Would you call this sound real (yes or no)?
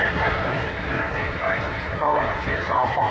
no